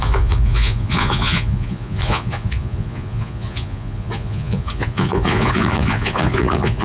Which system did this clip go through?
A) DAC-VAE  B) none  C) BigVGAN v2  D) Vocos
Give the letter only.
D